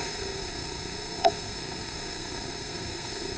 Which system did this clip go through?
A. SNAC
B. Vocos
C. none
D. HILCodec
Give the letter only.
A